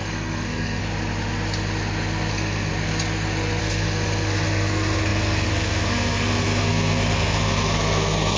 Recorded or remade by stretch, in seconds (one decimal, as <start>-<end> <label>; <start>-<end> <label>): 0.0-0.8 remade; 0.8-2.3 recorded; 2.3-2.7 remade; 2.7-3.6 recorded; 3.6-8.4 remade